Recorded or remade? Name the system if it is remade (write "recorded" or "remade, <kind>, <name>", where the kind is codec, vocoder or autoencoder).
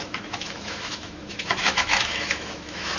remade, autoencoder, DAC-VAE